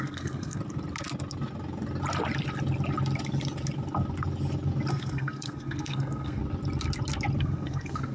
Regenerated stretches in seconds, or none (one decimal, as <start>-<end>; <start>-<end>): 0.0-0.6; 4.9-6.4; 7.4-8.1